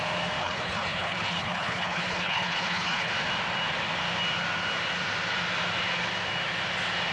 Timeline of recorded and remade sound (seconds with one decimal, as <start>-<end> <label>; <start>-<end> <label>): 0.0-0.4 recorded; 0.4-3.1 remade; 3.1-7.1 recorded